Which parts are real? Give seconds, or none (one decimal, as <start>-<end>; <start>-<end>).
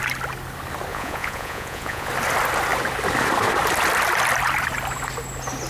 0.0-0.9; 2.1-5.7